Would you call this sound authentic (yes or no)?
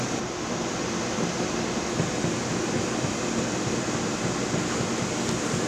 no